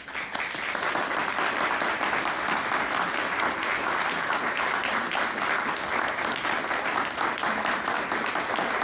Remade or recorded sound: recorded